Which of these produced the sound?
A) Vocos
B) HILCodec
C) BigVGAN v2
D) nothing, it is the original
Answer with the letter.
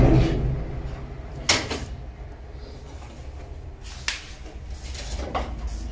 D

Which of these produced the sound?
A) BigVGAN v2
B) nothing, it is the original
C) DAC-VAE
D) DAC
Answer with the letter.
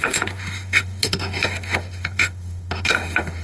C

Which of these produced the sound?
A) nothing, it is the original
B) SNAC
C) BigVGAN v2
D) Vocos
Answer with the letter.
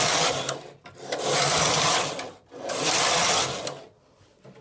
A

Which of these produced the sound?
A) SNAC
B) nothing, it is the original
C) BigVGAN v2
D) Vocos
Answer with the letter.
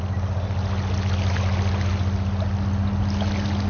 B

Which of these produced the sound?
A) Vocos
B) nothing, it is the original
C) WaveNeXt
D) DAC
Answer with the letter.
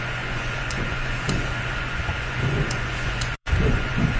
A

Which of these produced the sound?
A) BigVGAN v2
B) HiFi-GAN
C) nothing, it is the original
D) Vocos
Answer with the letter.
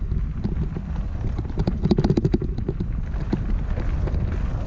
C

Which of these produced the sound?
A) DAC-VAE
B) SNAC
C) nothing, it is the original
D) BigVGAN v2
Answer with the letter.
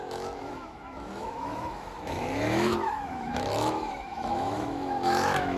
A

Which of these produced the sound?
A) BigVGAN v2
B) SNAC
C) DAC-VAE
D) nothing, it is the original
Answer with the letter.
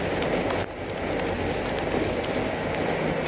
D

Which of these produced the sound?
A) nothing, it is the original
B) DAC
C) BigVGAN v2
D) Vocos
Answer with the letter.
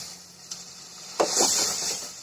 C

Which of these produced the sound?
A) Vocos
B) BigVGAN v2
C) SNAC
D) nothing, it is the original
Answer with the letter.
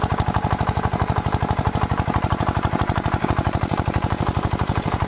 B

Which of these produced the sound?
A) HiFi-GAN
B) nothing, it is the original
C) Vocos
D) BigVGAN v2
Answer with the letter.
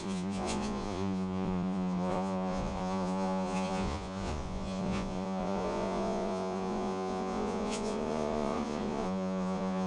C